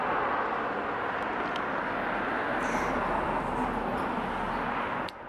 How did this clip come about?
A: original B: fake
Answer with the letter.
A